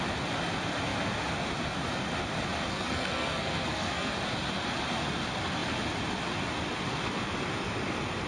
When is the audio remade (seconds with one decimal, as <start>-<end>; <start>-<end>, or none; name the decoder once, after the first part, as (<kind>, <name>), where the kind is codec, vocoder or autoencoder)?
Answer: 2.7-4.1 (codec, SNAC)